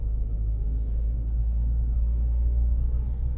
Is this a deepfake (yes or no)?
yes